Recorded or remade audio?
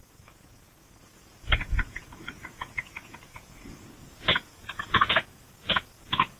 remade